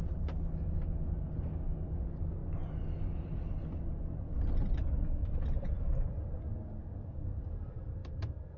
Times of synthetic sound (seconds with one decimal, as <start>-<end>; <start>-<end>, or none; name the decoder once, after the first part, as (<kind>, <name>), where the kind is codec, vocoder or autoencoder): 8.0-8.6 (vocoder, BigVGAN v2)